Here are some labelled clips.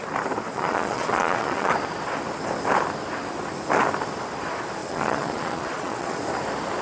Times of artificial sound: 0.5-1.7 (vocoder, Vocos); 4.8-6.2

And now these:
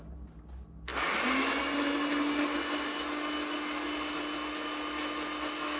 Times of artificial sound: none